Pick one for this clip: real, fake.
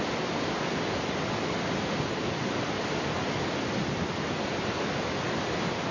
real